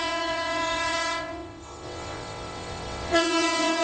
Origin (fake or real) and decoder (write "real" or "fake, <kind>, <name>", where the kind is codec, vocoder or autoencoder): fake, vocoder, WaveNeXt